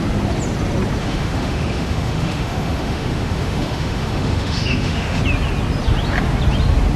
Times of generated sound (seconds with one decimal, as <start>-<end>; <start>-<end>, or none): 1.0-5.2